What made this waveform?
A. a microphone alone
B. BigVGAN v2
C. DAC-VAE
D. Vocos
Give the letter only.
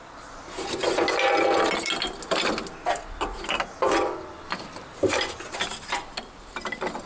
A